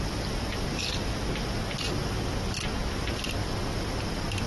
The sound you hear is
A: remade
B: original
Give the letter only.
B